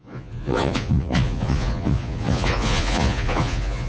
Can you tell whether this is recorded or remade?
remade